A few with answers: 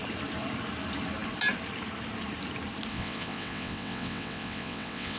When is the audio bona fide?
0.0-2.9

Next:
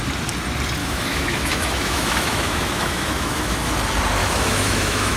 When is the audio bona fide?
0.0-0.8; 3.7-4.2

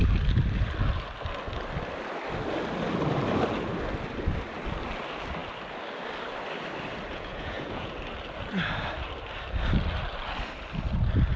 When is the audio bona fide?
0.0-7.1; 7.9-11.4

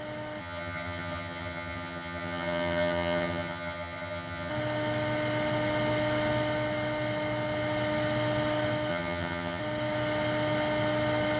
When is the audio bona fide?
0.0-0.4; 4.5-8.9; 9.6-11.4

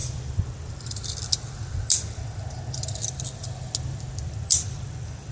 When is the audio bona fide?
0.0-5.3